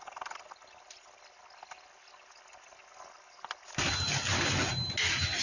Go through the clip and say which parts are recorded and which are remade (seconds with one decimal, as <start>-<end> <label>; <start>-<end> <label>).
0.0-5.4 recorded